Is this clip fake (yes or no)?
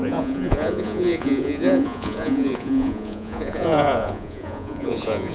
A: yes